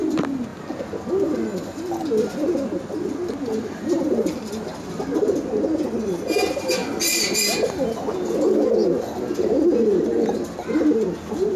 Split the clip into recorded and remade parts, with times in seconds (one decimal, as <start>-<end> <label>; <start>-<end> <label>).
0.0-11.6 recorded

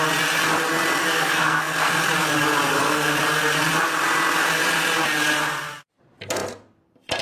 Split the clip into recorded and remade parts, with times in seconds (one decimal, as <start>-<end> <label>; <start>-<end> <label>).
0.0-1.0 recorded; 1.0-1.9 remade; 1.9-2.7 recorded; 2.7-3.2 remade; 3.2-7.2 recorded

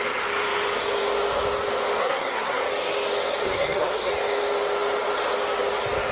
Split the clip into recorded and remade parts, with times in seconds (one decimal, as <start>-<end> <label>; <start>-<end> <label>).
0.0-2.0 recorded; 2.0-2.6 remade; 2.6-3.4 recorded; 3.4-4.1 remade; 4.1-6.1 recorded

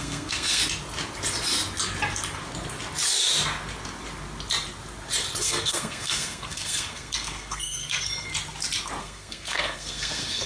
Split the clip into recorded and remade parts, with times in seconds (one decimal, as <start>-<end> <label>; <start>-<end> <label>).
0.0-0.6 remade; 0.6-5.4 recorded; 5.4-8.3 remade; 8.3-9.0 recorded; 9.0-10.5 remade

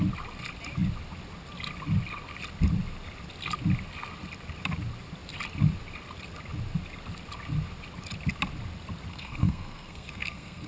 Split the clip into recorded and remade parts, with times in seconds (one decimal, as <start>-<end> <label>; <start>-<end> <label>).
0.0-9.1 recorded; 9.1-10.7 remade

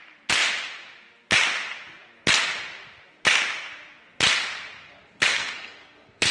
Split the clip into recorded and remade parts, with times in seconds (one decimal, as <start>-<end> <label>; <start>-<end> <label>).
0.0-5.3 recorded; 5.3-6.3 remade